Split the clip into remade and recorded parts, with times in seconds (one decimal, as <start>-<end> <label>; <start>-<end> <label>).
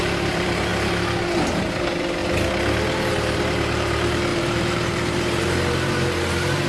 0.0-0.7 remade; 0.7-1.7 recorded; 1.7-2.2 remade; 2.2-3.1 recorded; 3.1-6.7 remade